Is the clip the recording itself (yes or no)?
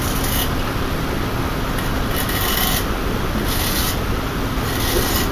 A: yes